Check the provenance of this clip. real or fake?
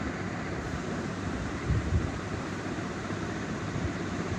fake